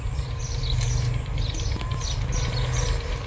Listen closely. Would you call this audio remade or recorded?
recorded